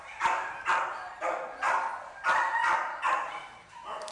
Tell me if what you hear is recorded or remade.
recorded